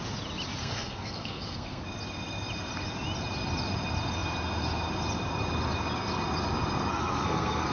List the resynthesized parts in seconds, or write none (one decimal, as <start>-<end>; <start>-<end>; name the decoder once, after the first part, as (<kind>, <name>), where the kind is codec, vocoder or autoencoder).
0.6-1.8 (codec, SNAC); 6.9-7.7